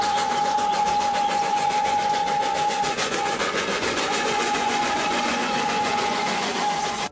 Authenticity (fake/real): fake